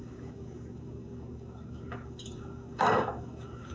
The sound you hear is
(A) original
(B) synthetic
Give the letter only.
B